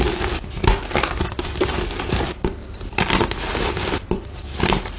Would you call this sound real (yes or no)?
yes